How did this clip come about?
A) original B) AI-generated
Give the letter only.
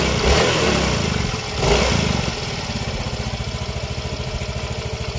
A